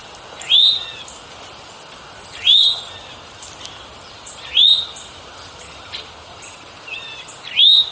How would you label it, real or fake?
real